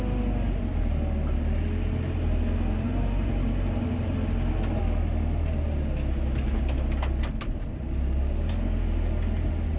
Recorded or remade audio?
recorded